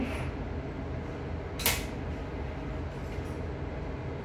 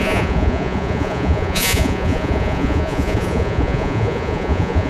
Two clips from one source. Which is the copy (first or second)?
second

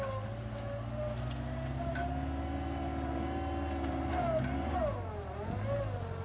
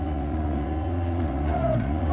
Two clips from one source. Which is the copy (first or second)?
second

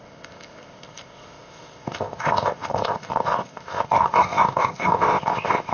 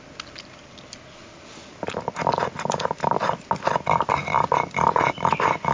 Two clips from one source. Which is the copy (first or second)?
first